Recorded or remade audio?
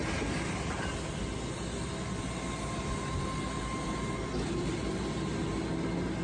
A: recorded